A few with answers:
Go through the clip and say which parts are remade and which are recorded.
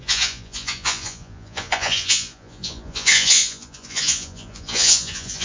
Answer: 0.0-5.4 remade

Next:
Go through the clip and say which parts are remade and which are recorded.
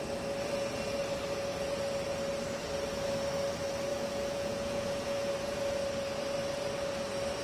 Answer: 0.0-3.9 recorded; 3.9-5.3 remade; 5.3-7.4 recorded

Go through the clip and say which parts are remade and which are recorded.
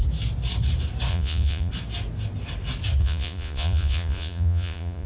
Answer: 0.0-1.1 recorded; 1.1-1.7 remade; 1.7-3.0 recorded; 3.0-5.1 remade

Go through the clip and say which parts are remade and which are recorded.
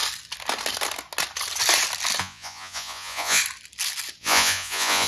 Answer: 0.0-2.2 recorded; 2.2-3.4 remade; 3.4-4.2 recorded; 4.2-5.1 remade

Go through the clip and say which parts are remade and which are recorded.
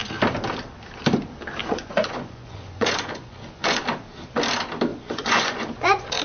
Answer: 0.0-1.6 recorded; 1.6-3.8 remade; 3.8-4.9 recorded; 4.9-6.2 remade